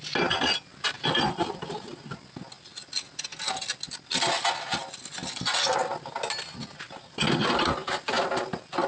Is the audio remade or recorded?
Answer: recorded